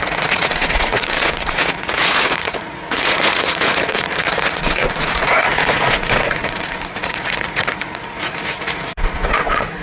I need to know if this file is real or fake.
fake